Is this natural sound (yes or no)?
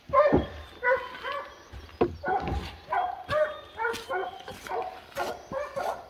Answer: yes